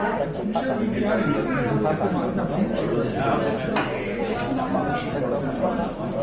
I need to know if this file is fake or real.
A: real